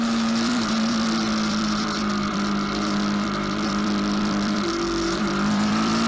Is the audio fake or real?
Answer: fake